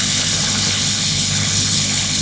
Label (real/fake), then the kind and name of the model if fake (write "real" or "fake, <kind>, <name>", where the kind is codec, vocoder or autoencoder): fake, codec, HILCodec